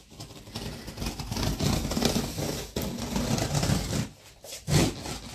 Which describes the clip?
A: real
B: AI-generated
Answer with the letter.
A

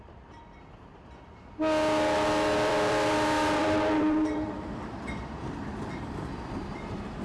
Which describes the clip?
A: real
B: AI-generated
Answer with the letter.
B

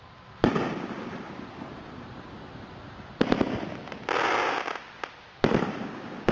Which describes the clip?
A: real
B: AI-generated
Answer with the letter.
A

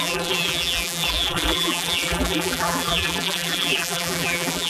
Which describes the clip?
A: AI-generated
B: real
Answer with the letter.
A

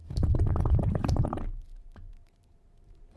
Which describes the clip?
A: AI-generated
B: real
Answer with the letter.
A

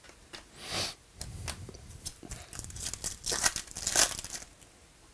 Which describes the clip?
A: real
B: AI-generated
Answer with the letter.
A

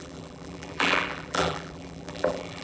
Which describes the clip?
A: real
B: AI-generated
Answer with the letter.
B